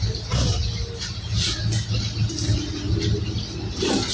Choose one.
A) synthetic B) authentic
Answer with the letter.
B